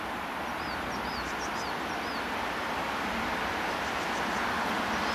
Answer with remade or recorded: recorded